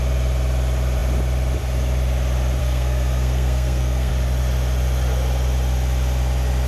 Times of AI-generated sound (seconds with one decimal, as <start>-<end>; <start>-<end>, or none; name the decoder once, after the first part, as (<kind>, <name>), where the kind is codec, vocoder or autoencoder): 2.6-4.1 (codec, SNAC)